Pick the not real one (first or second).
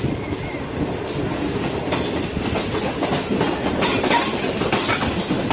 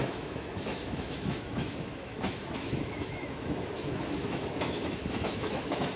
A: second